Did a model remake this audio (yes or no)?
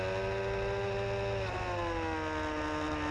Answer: no